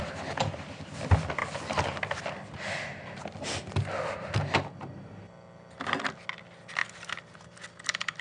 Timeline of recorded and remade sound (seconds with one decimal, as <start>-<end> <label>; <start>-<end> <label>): 0.0-8.2 recorded